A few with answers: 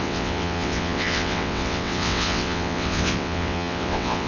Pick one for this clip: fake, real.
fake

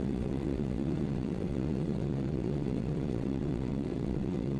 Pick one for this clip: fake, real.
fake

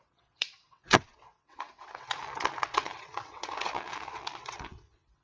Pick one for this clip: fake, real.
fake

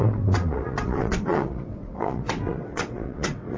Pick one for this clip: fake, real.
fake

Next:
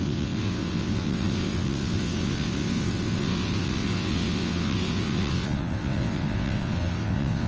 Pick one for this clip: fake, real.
fake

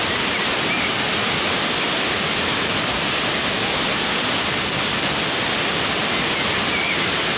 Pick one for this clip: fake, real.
real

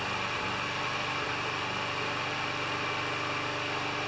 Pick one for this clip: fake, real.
real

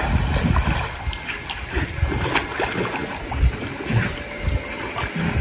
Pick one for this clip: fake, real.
real